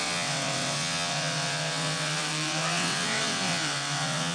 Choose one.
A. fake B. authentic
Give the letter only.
A